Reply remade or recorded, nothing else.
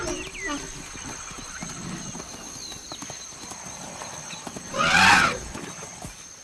recorded